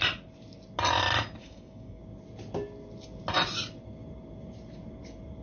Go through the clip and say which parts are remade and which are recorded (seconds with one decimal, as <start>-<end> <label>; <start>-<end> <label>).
0.0-1.4 recorded; 1.4-2.0 remade; 2.0-5.4 recorded